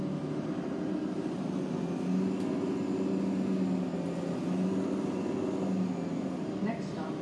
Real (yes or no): yes